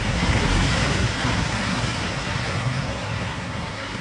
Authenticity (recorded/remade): remade